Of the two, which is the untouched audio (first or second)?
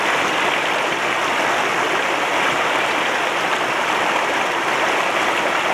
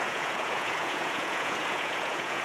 first